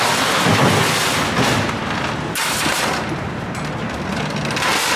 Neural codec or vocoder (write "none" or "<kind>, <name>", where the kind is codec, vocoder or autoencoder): none